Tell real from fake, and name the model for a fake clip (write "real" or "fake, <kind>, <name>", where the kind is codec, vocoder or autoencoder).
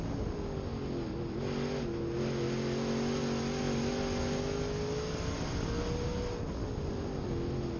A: real